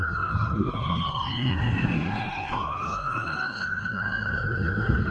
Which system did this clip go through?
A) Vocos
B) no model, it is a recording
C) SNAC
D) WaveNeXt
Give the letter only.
C